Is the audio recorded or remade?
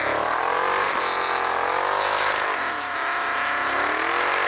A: recorded